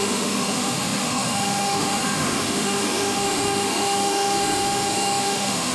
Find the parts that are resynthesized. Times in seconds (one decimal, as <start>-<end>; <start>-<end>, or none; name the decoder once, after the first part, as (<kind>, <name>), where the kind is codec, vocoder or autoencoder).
0.0-5.7 (autoencoder, DAC-VAE)